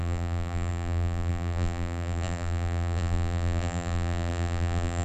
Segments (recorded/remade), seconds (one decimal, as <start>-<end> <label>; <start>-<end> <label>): 0.0-5.0 remade